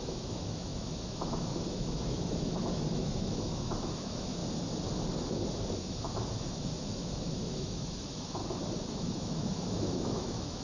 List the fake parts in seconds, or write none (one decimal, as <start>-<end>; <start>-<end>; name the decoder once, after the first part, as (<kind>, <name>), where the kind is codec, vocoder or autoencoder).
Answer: 0.0-4.4 (autoencoder, DAC-VAE); 5.8-8.4; 8.9-10.6